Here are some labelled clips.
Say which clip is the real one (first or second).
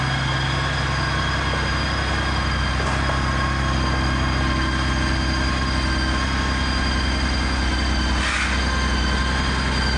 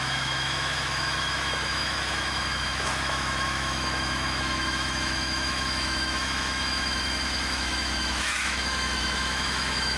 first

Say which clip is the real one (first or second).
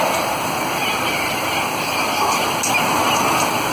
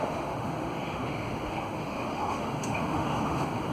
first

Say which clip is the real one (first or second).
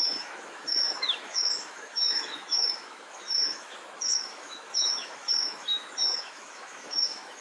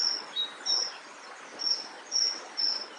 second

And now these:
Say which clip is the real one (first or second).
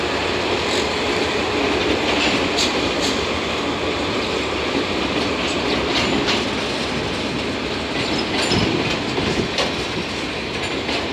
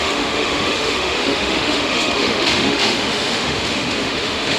first